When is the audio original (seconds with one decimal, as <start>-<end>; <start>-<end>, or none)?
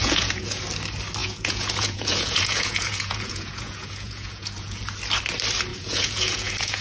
0.6-1.2; 4.8-5.7